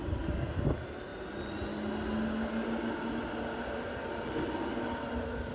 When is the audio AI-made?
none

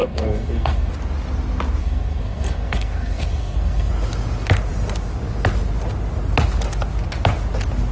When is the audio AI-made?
0.0-0.9 (codec, SNAC); 1.8-3.9

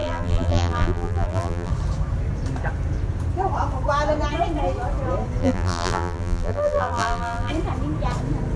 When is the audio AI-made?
0.0-1.7 (vocoder, BigVGAN v2); 5.4-7.5

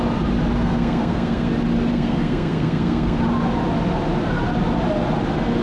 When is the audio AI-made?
0.6-1.5 (codec, SNAC); 1.9-3.2

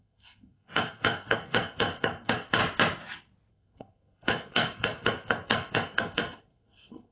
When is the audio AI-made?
0.0-2.6 (codec, SNAC); 3.5-7.1

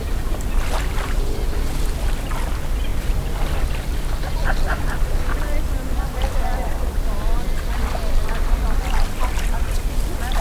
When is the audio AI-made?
none

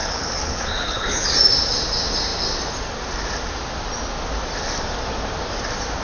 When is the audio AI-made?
0.0-1.3 (codec, HILCodec)